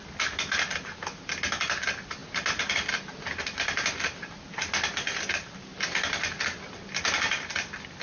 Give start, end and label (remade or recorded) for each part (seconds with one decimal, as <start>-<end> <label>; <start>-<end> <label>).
0.0-8.0 recorded